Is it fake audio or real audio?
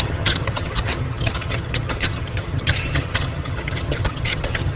fake